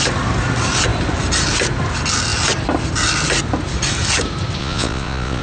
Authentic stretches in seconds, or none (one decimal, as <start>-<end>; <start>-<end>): 0.0-4.6